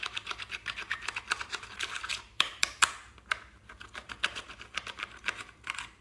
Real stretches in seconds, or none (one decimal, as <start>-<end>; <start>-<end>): none